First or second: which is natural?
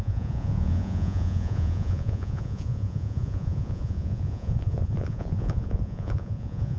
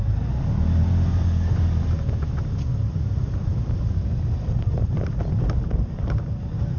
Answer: second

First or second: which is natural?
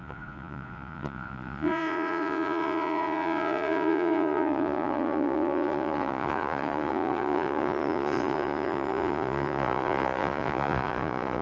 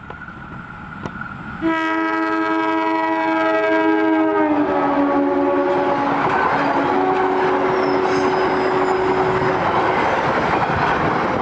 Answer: second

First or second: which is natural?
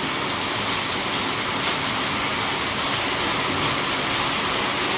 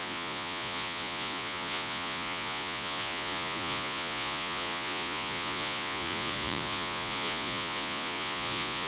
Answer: first